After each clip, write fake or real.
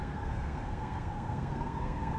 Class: fake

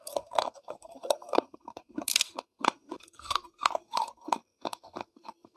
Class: fake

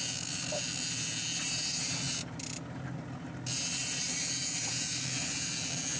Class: real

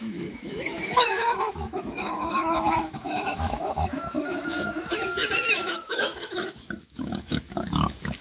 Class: fake